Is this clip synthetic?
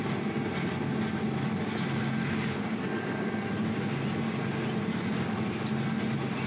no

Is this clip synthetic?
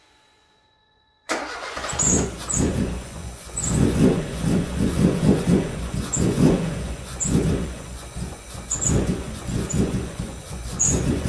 yes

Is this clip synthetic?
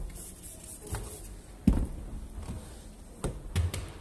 no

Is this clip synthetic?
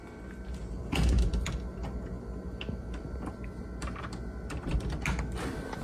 no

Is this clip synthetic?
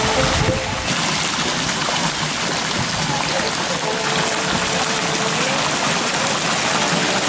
no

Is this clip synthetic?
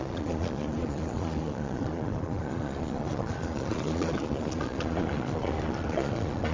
yes